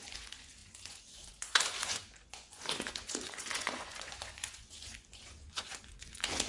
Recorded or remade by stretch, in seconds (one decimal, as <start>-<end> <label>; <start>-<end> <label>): 0.0-6.5 remade

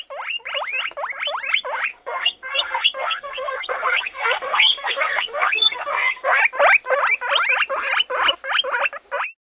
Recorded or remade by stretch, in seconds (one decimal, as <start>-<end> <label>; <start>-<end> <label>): 0.0-1.9 recorded; 1.9-6.4 remade; 6.4-9.4 recorded

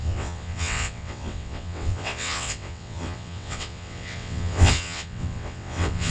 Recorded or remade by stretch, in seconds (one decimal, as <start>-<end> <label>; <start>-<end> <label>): 0.0-6.1 remade

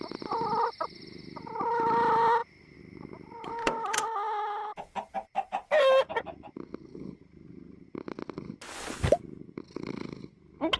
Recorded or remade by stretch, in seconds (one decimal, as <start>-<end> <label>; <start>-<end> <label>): 0.0-2.4 recorded; 2.4-3.5 remade; 3.5-10.8 recorded

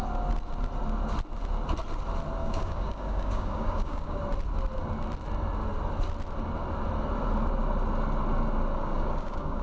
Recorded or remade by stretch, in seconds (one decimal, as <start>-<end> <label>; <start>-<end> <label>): 0.0-2.4 recorded; 2.4-4.2 remade; 4.2-8.8 recorded; 8.8-9.6 remade

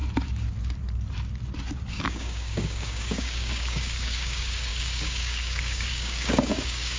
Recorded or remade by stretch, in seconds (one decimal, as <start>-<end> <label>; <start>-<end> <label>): 0.0-1.9 recorded; 1.9-7.0 remade

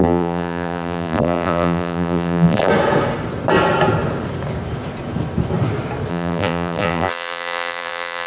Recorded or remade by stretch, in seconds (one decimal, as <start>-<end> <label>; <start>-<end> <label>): 0.0-2.7 remade; 2.7-6.1 recorded; 6.1-8.3 remade

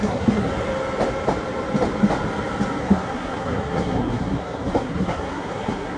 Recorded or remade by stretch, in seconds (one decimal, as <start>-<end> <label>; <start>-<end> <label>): 0.0-0.5 remade; 0.5-2.8 recorded; 2.8-6.0 remade